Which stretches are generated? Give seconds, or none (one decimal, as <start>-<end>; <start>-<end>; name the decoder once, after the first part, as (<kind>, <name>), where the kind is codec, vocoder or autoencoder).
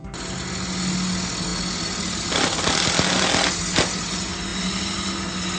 none